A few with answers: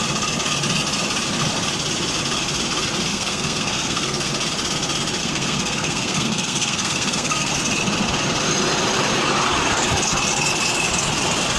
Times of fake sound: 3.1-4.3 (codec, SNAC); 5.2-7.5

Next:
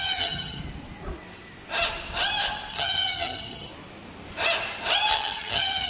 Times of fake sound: 0.0-0.6 (vocoder, HiFi-GAN); 2.7-3.7; 5.1-5.9

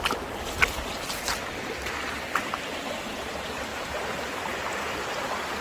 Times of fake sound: none

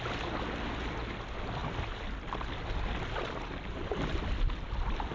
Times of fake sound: none